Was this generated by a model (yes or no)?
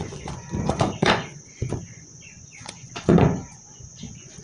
yes